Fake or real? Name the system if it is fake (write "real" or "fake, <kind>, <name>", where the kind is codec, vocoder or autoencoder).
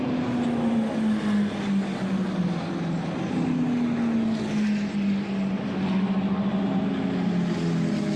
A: real